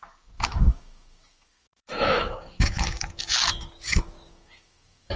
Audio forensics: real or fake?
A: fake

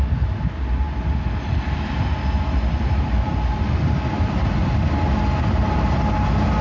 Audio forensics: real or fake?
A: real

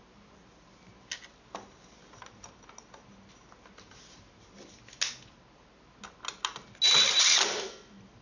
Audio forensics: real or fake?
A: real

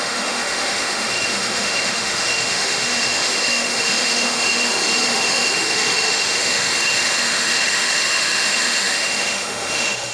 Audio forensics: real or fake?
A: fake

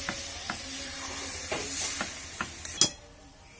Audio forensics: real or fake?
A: real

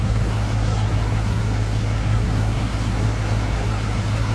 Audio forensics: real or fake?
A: fake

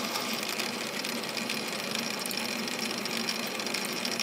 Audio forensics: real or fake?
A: fake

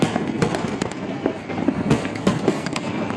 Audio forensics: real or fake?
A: fake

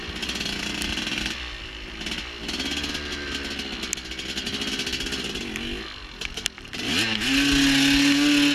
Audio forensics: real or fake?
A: real